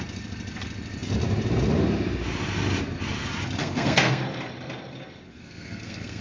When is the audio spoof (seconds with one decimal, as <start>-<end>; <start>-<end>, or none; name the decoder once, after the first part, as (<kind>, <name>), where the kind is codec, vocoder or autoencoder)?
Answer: 3.6-4.2 (codec, SNAC); 5.3-6.2